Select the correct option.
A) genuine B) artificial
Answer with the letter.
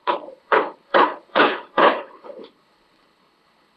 B